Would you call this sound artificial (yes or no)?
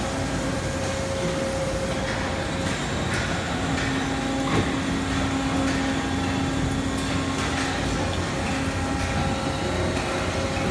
no